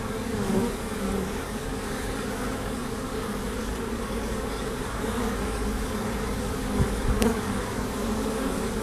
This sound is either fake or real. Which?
fake